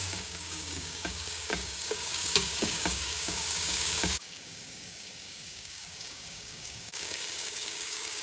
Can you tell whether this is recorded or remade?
remade